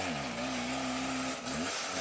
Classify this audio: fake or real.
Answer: real